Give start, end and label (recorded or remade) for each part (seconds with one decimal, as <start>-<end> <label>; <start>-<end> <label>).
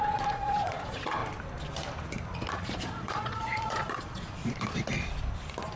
0.0-1.2 remade; 1.2-2.5 recorded; 2.5-4.4 remade; 4.4-5.8 recorded